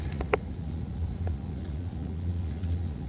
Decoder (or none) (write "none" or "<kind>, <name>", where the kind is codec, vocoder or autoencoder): vocoder, Vocos